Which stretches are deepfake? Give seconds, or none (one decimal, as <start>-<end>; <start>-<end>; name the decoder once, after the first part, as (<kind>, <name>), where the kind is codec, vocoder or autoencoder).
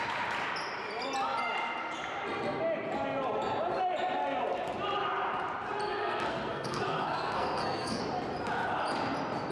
6.0-8.0 (codec, SNAC)